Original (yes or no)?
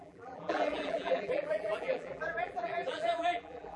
no